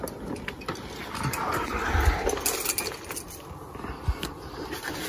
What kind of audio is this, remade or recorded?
recorded